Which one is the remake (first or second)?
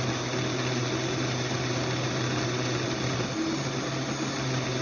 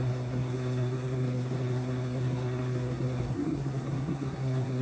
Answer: second